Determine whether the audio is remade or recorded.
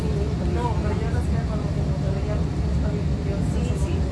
recorded